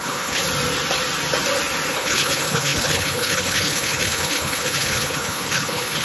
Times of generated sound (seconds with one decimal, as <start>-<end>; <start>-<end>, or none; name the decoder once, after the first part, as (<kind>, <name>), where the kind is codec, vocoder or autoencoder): 0.0-0.4 (codec, HILCodec); 1.9-6.0